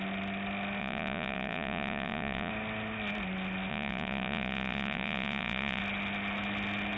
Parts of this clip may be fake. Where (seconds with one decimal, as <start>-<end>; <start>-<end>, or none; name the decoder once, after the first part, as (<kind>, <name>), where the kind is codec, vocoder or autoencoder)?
0.8-2.5 (vocoder, Vocos); 3.7-5.8